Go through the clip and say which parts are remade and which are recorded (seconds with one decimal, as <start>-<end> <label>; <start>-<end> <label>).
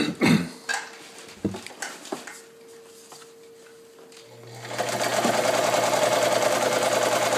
0.0-7.4 recorded